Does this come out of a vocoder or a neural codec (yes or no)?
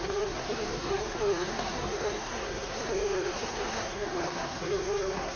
yes